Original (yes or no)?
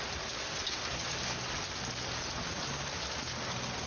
yes